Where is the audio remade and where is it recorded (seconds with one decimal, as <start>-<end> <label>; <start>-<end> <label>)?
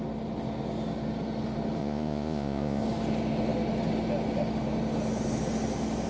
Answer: 0.0-1.8 recorded; 1.8-2.8 remade; 2.8-6.1 recorded